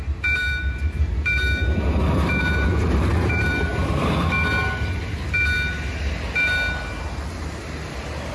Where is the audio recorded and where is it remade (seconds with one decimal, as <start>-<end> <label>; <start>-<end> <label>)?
0.0-1.6 remade; 1.6-2.5 recorded; 2.5-3.7 remade; 3.7-7.4 recorded; 7.4-8.3 remade